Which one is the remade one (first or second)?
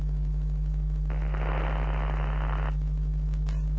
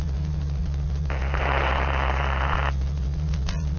second